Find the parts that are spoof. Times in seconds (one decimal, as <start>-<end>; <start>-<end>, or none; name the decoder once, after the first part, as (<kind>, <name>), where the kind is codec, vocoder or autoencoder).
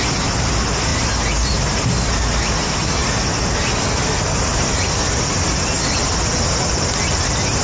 0.9-1.5 (vocoder, BigVGAN v2)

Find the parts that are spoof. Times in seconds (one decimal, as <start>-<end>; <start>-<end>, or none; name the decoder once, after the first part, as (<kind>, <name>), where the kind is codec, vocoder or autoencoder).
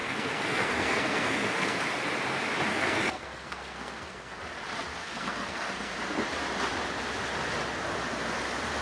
0.0-1.8 (codec, SNAC); 2.7-4.4; 5.0-5.9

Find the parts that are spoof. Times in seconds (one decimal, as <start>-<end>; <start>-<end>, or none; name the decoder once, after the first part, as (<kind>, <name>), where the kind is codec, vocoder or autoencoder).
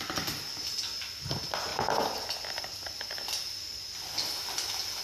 none